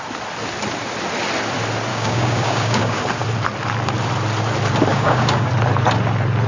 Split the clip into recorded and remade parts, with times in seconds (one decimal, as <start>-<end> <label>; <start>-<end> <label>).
0.0-1.9 recorded; 1.9-3.0 remade; 3.0-4.9 recorded; 4.9-5.5 remade; 5.5-6.5 recorded

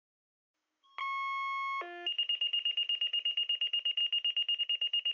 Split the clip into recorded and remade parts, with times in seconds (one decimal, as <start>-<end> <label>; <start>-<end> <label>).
0.0-0.9 remade; 0.9-2.2 recorded; 2.2-4.0 remade; 4.0-4.6 recorded; 4.6-5.1 remade

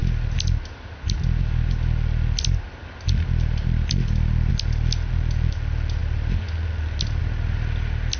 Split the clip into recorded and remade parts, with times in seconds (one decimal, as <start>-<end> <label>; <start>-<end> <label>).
0.0-8.2 recorded

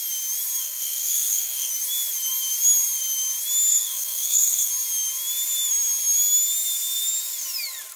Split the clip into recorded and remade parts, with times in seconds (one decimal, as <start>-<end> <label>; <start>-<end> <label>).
0.0-0.6 recorded; 0.6-1.7 remade; 1.7-3.7 recorded; 3.7-4.7 remade; 4.7-8.0 recorded

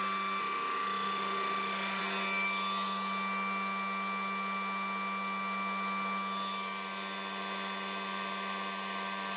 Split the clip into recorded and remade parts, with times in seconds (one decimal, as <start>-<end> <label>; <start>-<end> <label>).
0.0-0.4 recorded; 0.4-2.0 remade; 2.0-9.4 recorded

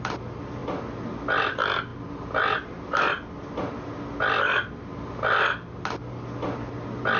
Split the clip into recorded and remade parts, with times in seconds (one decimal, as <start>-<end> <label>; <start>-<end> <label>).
0.0-7.2 recorded

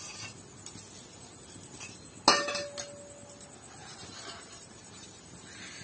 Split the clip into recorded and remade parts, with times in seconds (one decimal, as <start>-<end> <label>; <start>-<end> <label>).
0.0-3.8 recorded; 3.8-5.2 remade; 5.2-5.8 recorded